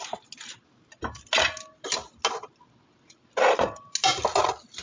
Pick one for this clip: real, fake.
real